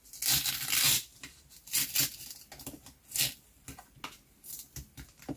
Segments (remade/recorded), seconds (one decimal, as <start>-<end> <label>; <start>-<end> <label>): 0.0-5.4 recorded